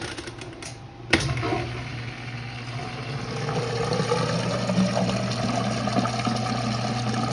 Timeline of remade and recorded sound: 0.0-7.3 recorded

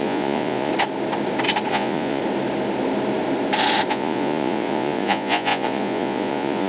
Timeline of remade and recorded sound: 0.0-0.7 remade; 0.7-1.7 recorded; 1.7-2.2 remade; 2.2-3.9 recorded; 3.9-6.7 remade

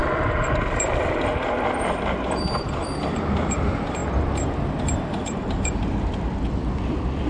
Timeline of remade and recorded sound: 0.0-0.9 recorded; 0.9-7.3 remade

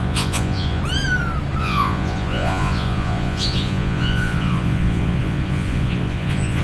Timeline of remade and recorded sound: 0.0-0.8 remade; 0.8-1.6 recorded; 1.6-6.6 remade

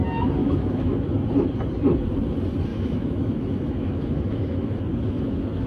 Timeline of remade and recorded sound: 0.0-0.4 recorded; 0.4-1.1 remade; 1.1-2.7 recorded; 2.7-5.7 remade

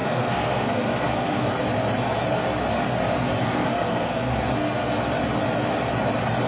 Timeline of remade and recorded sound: 0.0-1.5 remade; 1.5-3.4 recorded; 3.4-4.9 remade; 4.9-6.5 recorded

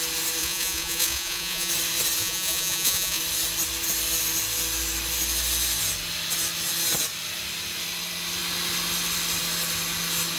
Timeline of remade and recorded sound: 0.0-0.4 recorded; 0.4-1.7 remade; 1.7-2.2 recorded; 2.2-3.2 remade; 3.2-10.4 recorded